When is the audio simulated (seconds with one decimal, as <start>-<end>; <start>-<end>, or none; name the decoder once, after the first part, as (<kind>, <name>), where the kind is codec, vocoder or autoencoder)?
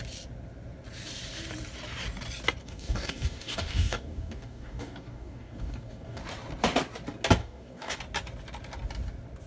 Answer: 2.6-6.2 (codec, DAC); 7.4-8.0